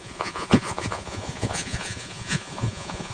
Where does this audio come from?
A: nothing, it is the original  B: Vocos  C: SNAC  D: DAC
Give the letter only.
B